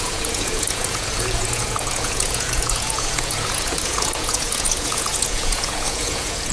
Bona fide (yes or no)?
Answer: no